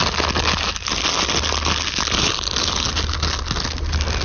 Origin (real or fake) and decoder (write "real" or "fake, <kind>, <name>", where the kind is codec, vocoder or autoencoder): real